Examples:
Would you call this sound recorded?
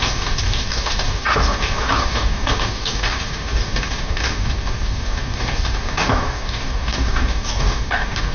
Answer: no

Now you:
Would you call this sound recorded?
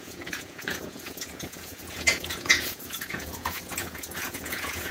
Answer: no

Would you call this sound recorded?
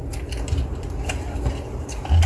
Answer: yes